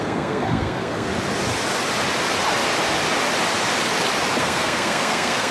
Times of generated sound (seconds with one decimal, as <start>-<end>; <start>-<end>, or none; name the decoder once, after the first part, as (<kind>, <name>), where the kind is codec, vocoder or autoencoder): 0.0-1.1 (codec, SNAC); 4.4-5.5